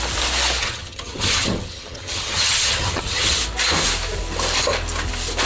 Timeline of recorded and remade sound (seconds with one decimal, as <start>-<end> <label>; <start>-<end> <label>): 0.0-0.6 recorded; 0.6-3.4 remade; 3.4-5.5 recorded